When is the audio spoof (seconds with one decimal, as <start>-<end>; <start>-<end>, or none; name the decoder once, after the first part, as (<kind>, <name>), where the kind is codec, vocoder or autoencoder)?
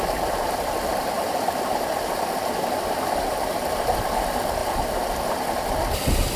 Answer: 4.6-5.2 (vocoder, BigVGAN v2)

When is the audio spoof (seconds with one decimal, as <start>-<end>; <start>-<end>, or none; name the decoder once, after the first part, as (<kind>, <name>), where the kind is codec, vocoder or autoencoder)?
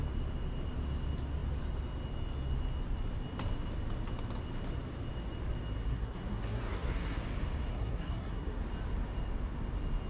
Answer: 5.9-7.2 (codec, SNAC); 7.7-8.6